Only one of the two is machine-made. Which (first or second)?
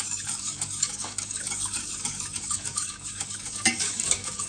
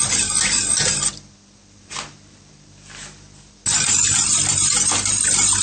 first